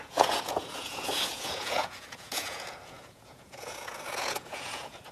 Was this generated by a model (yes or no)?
yes